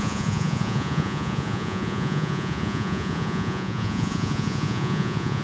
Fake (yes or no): yes